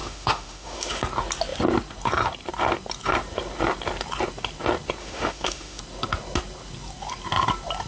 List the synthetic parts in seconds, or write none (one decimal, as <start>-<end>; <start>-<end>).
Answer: 0.0-1.0; 5.0-5.8